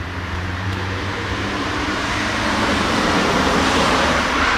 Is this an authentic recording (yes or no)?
no